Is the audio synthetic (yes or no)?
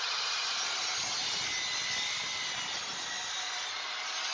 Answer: no